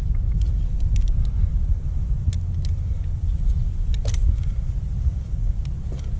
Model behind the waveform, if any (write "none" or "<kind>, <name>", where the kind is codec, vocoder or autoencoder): none